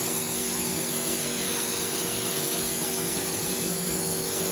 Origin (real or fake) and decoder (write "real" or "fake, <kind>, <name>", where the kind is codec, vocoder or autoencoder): fake, codec, SNAC